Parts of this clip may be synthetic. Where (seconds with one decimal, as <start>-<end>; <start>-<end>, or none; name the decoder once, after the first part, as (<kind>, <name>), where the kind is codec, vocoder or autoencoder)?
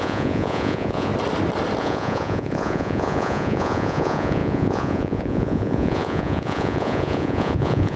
0.0-1.1 (vocoder, Vocos); 1.8-8.0